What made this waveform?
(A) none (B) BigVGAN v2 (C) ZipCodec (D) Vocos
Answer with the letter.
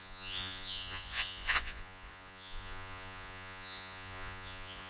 D